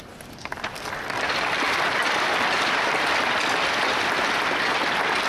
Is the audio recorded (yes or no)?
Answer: no